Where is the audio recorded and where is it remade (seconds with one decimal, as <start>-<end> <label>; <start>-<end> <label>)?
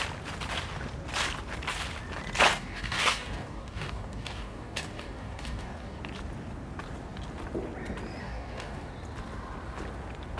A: 0.0-2.5 recorded; 2.5-6.0 remade; 6.0-8.2 recorded; 8.2-8.9 remade; 8.9-10.4 recorded